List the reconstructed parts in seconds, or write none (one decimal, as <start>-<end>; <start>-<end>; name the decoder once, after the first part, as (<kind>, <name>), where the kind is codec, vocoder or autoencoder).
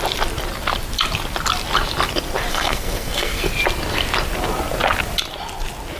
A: 2.5-3.5 (codec, SNAC)